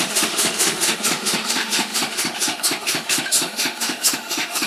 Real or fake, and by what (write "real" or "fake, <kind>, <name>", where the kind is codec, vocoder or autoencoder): fake, autoencoder, DAC-VAE